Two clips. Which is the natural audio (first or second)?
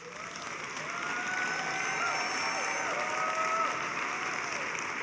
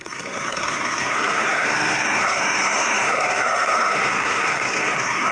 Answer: first